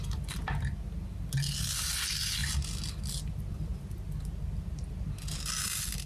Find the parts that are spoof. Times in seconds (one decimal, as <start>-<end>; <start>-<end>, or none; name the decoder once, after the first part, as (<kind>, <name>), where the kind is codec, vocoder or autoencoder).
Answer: none